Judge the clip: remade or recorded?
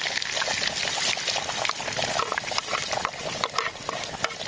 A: recorded